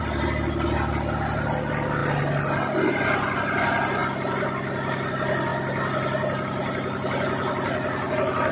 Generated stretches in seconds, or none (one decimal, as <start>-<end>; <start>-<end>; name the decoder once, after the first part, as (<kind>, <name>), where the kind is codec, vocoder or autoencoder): none